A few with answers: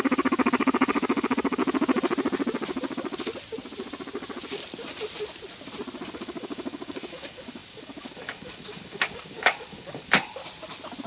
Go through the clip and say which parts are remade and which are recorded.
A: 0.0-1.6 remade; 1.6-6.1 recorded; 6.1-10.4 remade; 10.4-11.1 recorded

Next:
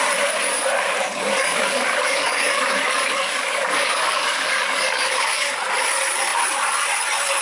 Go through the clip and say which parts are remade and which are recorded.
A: 0.0-1.1 recorded; 1.1-5.5 remade; 5.5-7.4 recorded

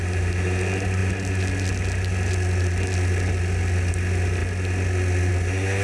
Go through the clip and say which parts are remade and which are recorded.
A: 0.0-5.8 recorded

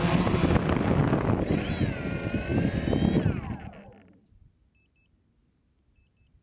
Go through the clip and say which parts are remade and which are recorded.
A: 0.0-6.4 recorded

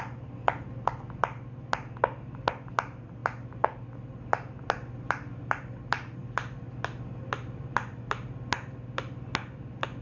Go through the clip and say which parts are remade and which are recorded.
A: 0.0-10.0 recorded